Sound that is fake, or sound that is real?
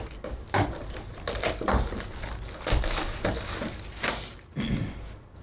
real